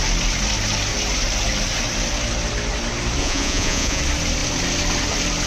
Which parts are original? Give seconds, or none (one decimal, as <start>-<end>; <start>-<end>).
0.0-3.2; 4.0-5.5